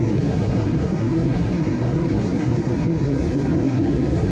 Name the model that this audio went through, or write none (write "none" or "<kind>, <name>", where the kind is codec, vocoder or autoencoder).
codec, SNAC